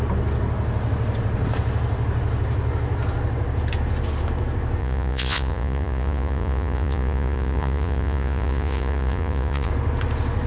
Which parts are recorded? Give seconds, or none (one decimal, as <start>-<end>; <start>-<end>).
0.0-4.8; 9.7-10.5